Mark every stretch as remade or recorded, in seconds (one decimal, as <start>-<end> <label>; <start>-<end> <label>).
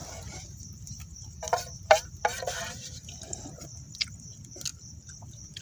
0.0-3.4 remade; 3.4-5.6 recorded